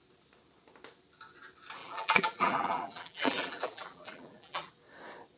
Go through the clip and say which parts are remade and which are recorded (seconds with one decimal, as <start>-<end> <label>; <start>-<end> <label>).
0.0-1.8 recorded; 1.8-4.7 remade; 4.7-5.4 recorded